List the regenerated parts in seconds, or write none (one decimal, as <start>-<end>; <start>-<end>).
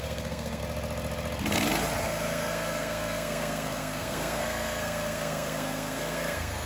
0.0-0.6; 2.0-6.7